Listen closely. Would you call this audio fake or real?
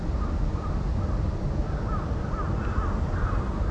real